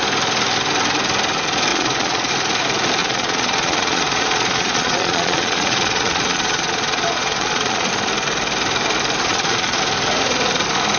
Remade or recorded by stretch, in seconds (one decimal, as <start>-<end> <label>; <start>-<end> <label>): 0.0-1.7 recorded; 1.7-2.3 remade; 2.3-3.0 recorded; 3.0-7.9 remade; 7.9-9.2 recorded; 9.2-9.8 remade; 9.8-11.0 recorded